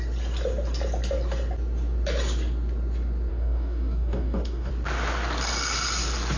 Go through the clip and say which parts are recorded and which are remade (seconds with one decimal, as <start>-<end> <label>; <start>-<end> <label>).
0.0-3.3 recorded; 3.3-4.7 remade; 4.7-6.4 recorded